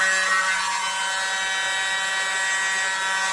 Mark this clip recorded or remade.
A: recorded